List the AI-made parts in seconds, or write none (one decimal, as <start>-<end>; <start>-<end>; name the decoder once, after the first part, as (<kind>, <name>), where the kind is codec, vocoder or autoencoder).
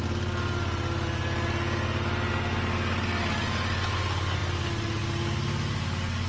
none